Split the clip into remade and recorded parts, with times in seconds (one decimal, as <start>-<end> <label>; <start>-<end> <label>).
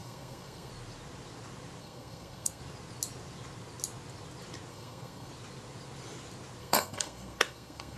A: 0.0-0.7 remade; 0.7-1.8 recorded; 1.8-2.6 remade; 2.6-4.7 recorded; 4.7-5.3 remade; 5.3-6.6 recorded; 6.6-8.0 remade